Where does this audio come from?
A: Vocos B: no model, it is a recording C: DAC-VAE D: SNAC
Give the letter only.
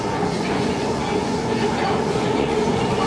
A